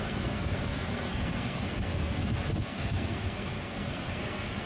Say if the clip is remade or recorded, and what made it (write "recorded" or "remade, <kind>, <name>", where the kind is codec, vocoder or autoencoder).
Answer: remade, codec, SNAC